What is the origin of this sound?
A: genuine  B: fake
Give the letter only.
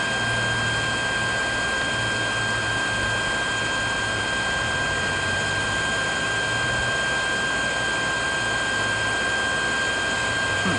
A